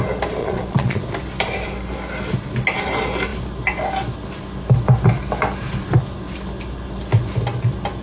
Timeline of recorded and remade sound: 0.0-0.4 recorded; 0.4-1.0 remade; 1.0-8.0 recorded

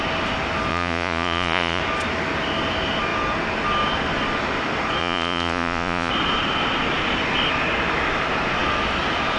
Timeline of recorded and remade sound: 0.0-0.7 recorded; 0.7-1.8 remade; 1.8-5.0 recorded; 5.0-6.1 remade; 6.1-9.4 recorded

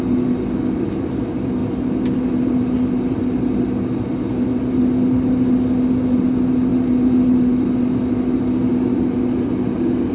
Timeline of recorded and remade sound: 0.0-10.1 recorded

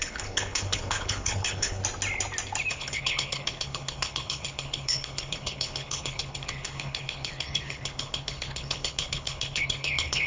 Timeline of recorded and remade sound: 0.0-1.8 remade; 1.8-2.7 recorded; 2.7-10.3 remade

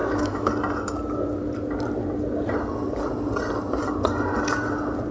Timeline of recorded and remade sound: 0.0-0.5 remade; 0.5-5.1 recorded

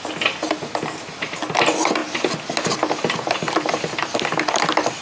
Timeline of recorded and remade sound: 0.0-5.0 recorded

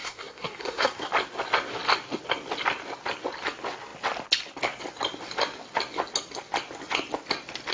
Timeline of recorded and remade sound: 0.0-1.1 remade; 1.1-7.7 recorded